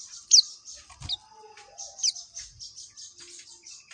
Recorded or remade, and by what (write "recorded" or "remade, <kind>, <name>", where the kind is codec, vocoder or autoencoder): recorded